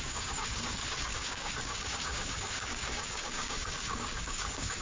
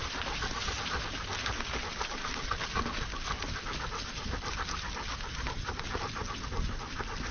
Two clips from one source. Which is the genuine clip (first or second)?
second